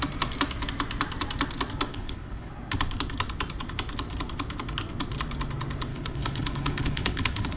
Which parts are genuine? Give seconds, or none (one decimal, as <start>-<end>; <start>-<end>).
0.0-1.9; 2.5-5.9